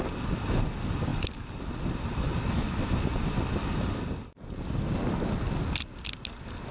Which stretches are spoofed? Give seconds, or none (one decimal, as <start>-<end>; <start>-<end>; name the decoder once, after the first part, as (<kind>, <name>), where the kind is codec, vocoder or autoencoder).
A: none